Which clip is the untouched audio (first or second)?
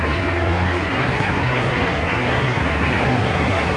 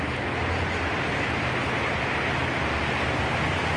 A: second